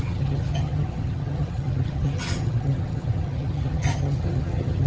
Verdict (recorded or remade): remade